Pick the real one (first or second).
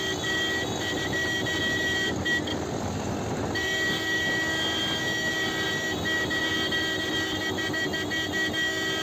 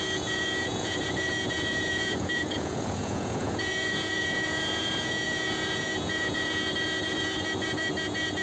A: first